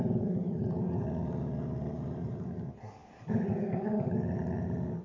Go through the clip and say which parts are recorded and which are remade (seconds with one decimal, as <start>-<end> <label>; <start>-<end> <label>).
0.0-5.0 recorded